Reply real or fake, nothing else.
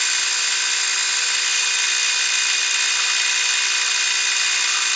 real